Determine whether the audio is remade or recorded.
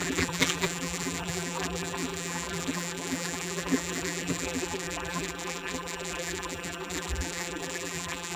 remade